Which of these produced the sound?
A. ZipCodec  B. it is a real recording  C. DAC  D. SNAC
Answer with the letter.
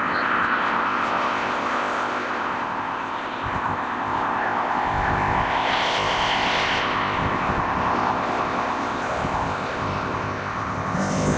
A